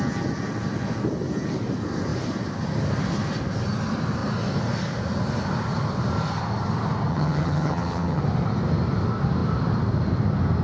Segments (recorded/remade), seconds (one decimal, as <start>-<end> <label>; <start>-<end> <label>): 0.0-7.1 recorded; 7.1-8.2 remade; 8.2-10.6 recorded